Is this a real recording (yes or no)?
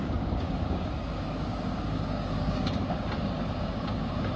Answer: no